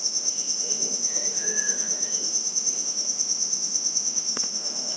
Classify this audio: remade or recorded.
remade